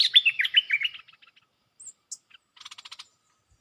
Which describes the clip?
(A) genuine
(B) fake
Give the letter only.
A